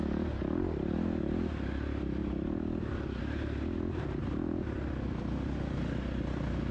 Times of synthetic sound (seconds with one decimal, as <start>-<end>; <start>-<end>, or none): none